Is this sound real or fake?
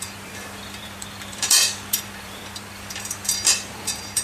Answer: fake